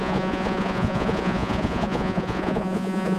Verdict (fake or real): fake